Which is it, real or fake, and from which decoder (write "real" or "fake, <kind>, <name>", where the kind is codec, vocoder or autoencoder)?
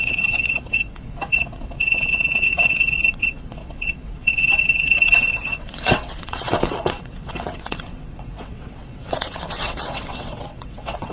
fake, vocoder, WaveNeXt